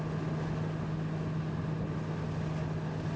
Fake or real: real